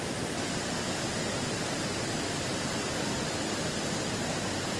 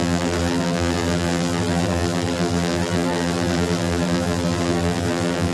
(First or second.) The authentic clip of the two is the first